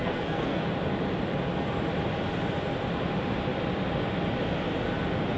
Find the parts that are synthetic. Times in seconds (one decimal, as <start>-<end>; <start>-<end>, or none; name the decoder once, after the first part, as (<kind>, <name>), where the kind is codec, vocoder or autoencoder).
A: 0.0-0.6 (codec, SNAC)